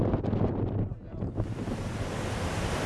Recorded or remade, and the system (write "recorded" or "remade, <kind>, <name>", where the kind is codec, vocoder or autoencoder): recorded